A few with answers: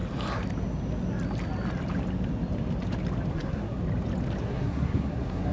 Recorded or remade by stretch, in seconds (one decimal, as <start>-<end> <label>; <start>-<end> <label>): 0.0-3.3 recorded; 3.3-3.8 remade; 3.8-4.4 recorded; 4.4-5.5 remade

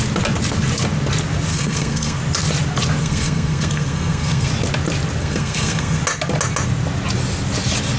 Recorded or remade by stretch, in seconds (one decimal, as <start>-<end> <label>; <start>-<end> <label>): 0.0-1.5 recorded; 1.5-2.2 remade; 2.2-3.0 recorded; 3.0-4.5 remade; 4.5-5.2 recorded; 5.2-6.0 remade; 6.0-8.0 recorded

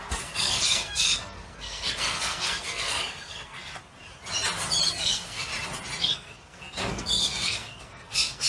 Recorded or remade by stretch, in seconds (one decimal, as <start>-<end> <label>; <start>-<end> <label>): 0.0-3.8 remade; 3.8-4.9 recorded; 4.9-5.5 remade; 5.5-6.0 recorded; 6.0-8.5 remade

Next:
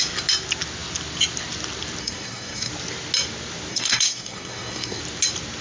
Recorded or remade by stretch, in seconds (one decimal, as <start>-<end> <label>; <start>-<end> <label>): 0.0-2.0 recorded; 2.0-2.7 remade; 2.7-3.7 recorded; 3.7-5.0 remade; 5.0-5.6 recorded